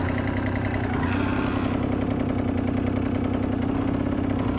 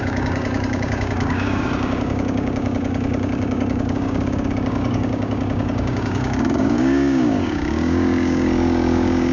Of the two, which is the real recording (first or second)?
first